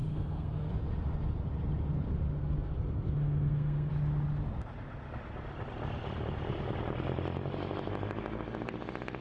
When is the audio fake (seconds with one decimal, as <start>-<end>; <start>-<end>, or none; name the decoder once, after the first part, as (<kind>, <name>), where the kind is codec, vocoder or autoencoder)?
0.0-0.7 (codec, SNAC); 2.4-3.9